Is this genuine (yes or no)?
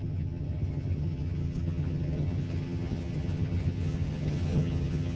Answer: no